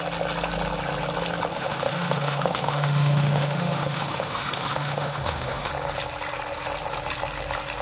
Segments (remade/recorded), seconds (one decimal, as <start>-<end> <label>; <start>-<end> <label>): 0.0-1.5 recorded; 1.5-5.7 remade; 5.7-7.8 recorded